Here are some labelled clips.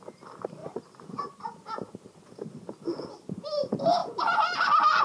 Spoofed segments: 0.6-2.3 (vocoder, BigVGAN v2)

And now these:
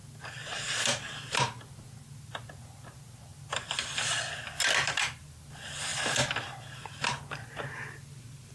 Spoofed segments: 3.3-4.3 (vocoder, BigVGAN v2)

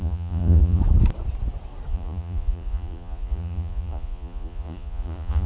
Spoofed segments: 0.0-0.8 (vocoder, Vocos); 1.9-5.5

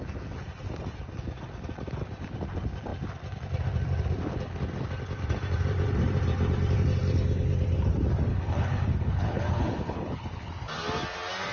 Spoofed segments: 8.3-10.5 (codec, HILCodec)

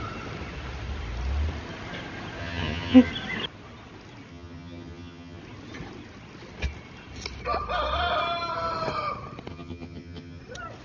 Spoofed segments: 2.4-3.1 (vocoder, HiFi-GAN); 4.3-5.4; 9.5-10.4

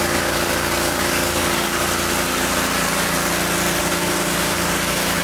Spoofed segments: 0.0-1.8 (codec, DAC); 3.8-5.2